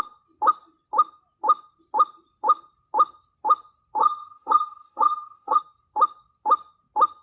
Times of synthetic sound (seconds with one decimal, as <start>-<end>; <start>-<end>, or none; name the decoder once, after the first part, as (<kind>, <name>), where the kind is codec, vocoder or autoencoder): 4.0-5.6 (vocoder, HiFi-GAN)